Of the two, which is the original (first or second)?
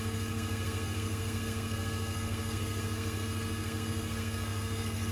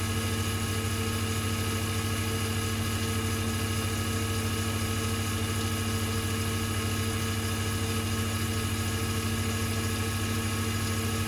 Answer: second